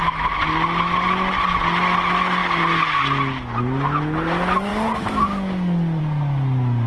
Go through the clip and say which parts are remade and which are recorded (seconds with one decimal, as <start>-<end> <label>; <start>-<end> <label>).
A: 0.0-6.9 recorded